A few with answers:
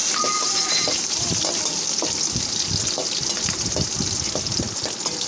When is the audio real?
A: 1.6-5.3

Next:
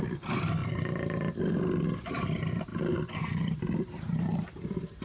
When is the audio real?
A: none